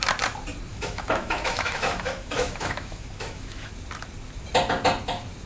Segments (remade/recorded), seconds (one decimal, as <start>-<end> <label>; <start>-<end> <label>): 0.0-0.7 recorded; 0.7-3.7 remade; 3.7-5.5 recorded